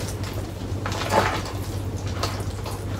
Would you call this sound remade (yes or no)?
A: no